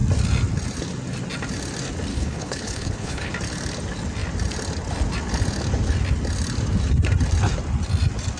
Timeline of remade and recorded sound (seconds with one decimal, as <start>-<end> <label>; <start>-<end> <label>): 0.0-2.1 recorded; 2.1-3.3 remade; 3.3-8.4 recorded